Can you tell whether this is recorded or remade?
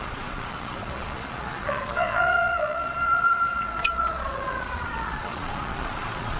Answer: remade